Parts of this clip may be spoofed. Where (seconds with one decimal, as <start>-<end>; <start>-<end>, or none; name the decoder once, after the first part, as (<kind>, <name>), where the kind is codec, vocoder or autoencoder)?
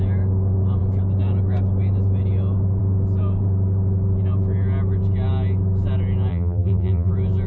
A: 6.3-7.1 (vocoder, BigVGAN v2)